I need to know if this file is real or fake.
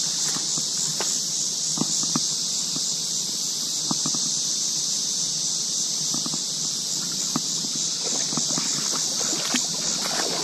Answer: real